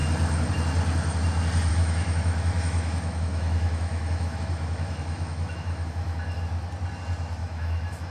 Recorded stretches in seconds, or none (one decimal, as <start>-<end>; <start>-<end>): 0.0-1.7; 6.4-7.4